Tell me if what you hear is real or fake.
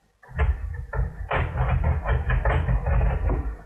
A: real